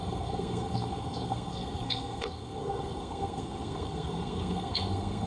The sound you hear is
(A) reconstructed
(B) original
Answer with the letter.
A